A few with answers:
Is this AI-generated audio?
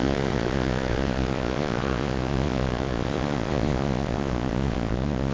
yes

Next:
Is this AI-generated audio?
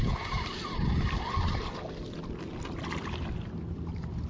no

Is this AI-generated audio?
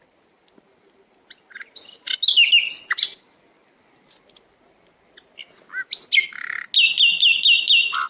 no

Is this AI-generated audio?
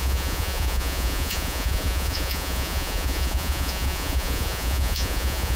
yes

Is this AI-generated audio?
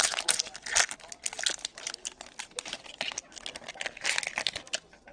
no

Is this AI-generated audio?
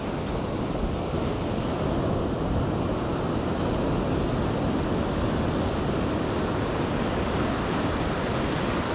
no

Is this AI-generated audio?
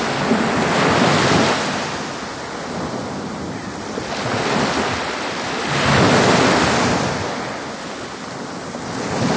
no